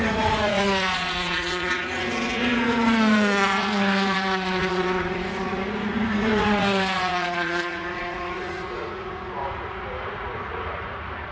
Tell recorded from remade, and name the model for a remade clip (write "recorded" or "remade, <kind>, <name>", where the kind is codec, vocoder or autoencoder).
remade, vocoder, Vocos